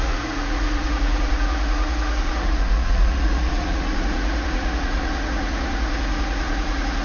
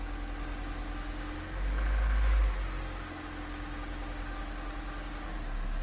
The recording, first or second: second